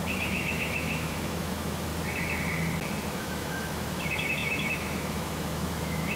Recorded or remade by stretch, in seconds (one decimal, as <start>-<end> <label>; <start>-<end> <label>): 0.0-1.9 remade; 1.9-3.1 recorded; 3.1-6.2 remade